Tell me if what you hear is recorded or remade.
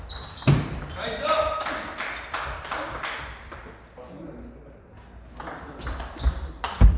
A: recorded